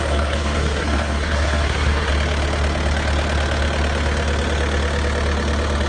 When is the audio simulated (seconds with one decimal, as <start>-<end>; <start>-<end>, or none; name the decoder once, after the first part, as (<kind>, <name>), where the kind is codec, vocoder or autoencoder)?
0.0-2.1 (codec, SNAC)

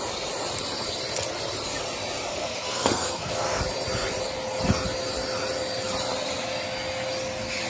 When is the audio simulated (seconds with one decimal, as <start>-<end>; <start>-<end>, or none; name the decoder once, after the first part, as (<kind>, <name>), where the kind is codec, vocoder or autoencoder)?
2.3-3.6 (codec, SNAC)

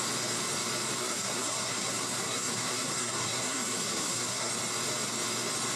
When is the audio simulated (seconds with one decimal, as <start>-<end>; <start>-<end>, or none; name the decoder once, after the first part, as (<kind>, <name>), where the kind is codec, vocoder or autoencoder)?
1.0-4.5 (codec, SNAC)

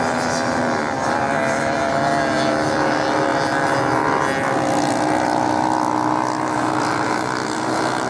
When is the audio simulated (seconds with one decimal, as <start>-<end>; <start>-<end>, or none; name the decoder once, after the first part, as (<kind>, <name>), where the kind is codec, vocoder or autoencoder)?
none